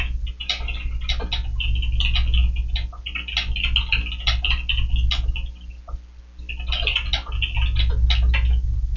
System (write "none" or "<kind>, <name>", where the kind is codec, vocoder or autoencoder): none